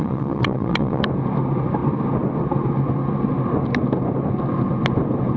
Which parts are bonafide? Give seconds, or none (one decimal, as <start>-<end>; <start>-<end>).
1.0-5.4